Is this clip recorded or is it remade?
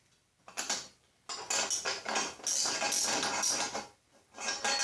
recorded